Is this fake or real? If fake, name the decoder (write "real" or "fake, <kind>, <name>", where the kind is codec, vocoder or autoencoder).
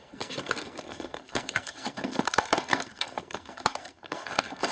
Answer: fake, codec, SNAC